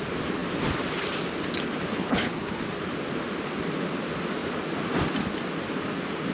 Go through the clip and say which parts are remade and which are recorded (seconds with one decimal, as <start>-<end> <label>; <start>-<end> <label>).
0.0-1.9 recorded; 1.9-2.6 remade; 2.6-6.3 recorded